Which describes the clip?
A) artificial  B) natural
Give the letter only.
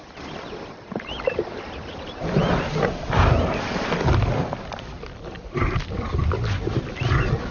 A